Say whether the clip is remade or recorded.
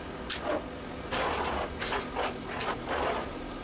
recorded